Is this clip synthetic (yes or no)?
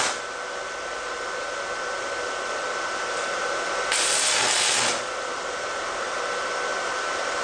no